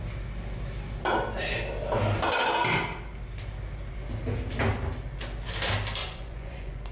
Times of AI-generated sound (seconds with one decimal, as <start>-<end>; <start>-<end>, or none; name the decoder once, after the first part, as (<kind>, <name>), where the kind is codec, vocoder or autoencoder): 6.0-6.9 (vocoder, Vocos)